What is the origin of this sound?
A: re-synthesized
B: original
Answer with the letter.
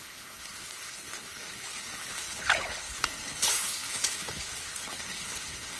A